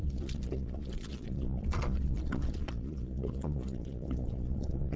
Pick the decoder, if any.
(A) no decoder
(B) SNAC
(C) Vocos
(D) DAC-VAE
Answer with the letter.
C